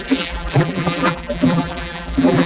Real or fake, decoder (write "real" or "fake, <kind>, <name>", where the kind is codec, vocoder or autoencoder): fake, vocoder, BigVGAN v2